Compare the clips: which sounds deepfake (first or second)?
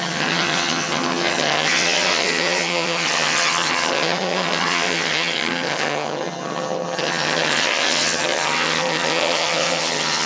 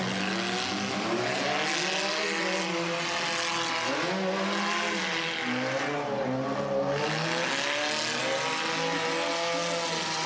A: first